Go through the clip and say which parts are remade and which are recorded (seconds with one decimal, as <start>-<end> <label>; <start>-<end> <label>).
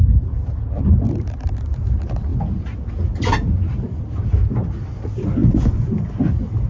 0.0-6.7 recorded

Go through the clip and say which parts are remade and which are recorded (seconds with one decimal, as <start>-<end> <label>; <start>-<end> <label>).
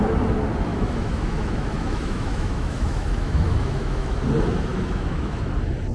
0.0-0.7 recorded; 0.7-4.2 remade; 4.2-4.7 recorded; 4.7-5.4 remade; 5.4-5.9 recorded